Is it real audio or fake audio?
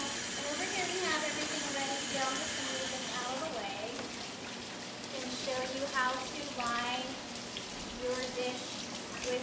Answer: real